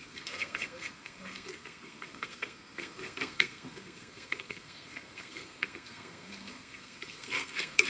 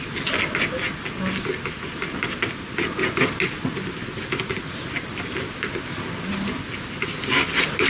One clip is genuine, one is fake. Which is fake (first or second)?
first